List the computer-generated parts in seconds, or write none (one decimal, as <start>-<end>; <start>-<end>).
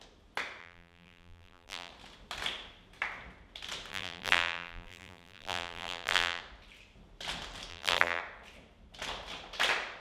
0.6-1.9; 3.9-6.4; 7.7-8.2